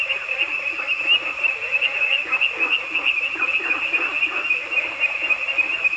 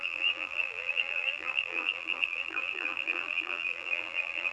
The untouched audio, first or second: first